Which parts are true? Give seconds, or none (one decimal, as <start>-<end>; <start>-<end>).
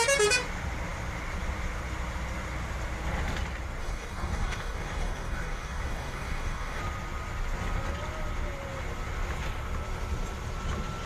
0.0-3.8; 6.8-11.1